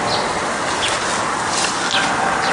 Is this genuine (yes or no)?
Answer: yes